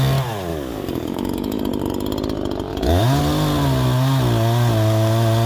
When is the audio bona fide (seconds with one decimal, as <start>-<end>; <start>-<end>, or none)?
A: 0.0-0.5; 1.7-2.7; 3.2-5.5